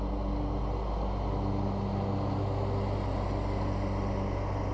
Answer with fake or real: real